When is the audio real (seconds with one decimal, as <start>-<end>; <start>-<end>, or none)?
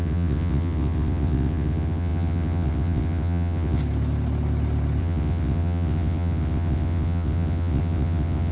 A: 3.8-5.0